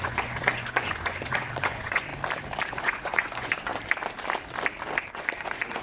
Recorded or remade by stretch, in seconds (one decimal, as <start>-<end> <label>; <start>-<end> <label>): 0.0-2.1 remade; 2.1-2.7 recorded; 2.7-3.7 remade; 3.7-5.0 recorded; 5.0-5.8 remade